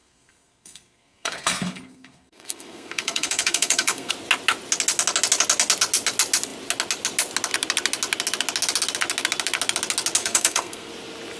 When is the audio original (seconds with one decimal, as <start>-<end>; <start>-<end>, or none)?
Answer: 4.1-10.2; 10.9-11.4